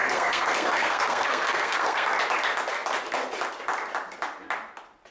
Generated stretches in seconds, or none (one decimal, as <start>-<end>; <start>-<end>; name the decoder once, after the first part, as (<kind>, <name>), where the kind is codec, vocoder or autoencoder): 0.0-2.1 (codec, SNAC)